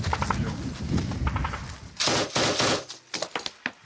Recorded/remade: recorded